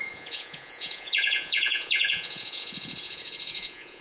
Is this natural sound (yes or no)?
no